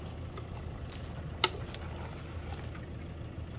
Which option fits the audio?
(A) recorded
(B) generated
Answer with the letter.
A